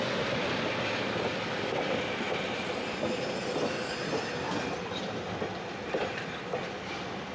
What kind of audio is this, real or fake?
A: real